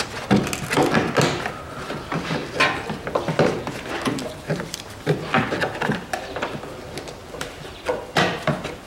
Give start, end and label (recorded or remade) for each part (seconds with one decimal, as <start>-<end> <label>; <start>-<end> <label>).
0.0-7.2 recorded; 7.2-7.8 remade; 7.8-8.9 recorded